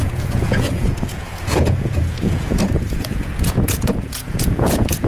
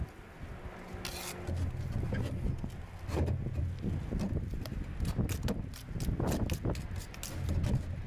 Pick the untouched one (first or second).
second